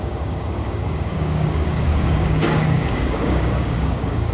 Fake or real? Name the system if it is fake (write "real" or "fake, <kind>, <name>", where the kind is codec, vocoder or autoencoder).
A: fake, codec, DAC